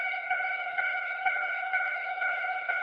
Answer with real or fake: fake